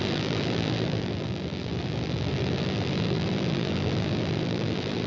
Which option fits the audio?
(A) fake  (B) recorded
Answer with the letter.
A